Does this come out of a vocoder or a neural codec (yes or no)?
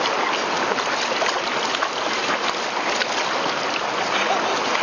no